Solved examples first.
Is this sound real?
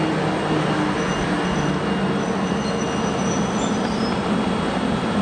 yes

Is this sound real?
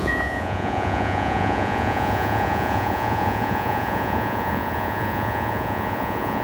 no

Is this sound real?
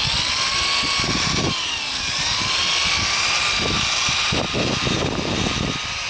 yes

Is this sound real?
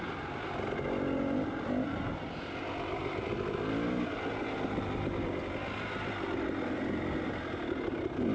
yes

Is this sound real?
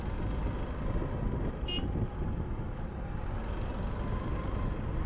yes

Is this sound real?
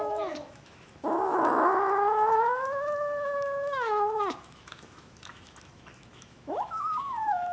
no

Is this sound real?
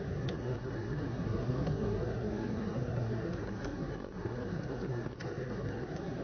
no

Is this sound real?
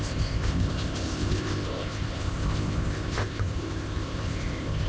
no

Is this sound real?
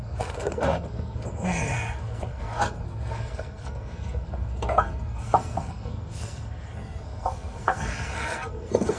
no